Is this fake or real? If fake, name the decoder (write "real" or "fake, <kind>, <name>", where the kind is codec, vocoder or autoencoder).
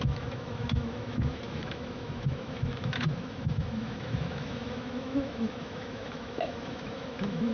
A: fake, autoencoder, DAC-VAE